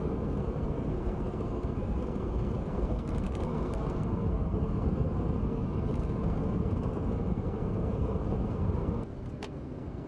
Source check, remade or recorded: remade